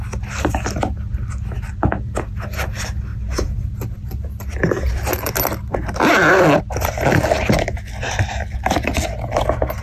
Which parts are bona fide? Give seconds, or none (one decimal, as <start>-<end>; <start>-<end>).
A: 0.0-9.8